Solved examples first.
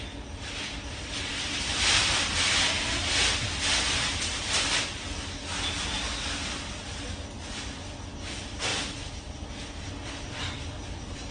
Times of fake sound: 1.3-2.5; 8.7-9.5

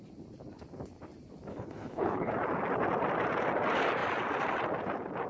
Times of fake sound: 1.5-2.3

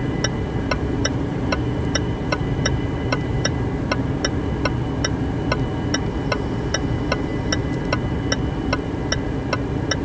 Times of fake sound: 1.0-3.6

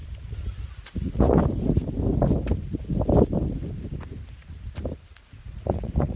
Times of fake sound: 0.6-1.4; 5.1-6.2

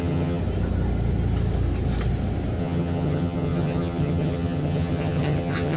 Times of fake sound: 0.0-0.4; 2.6-5.8